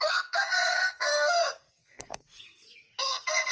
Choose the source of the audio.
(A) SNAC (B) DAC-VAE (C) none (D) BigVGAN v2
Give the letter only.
A